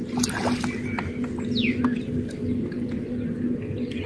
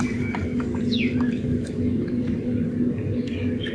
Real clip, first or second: first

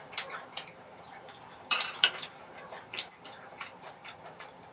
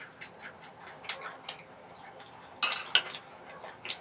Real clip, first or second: second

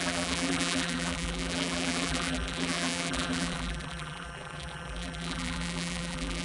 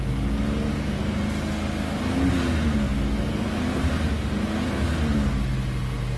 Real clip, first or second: second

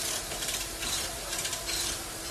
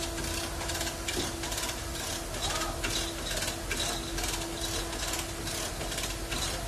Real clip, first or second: second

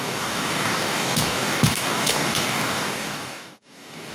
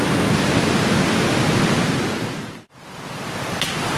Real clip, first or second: second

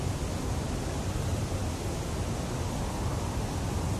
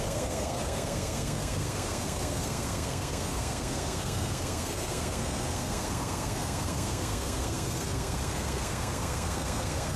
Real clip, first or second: first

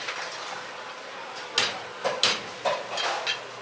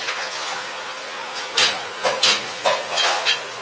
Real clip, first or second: first